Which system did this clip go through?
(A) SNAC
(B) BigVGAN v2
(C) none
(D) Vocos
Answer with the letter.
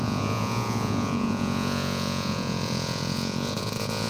D